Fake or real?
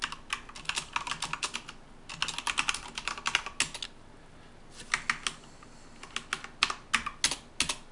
real